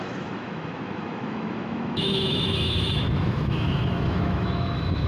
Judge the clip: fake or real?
fake